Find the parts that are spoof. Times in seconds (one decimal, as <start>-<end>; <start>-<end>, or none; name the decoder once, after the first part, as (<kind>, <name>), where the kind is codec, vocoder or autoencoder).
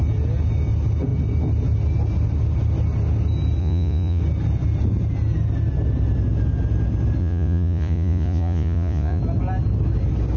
3.6-4.2 (vocoder, Vocos); 7.2-9.2